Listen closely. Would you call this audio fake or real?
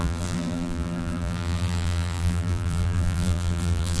fake